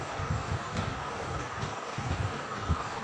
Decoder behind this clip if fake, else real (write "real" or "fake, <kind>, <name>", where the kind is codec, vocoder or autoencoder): fake, codec, DAC